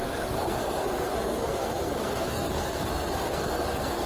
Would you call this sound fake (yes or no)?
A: yes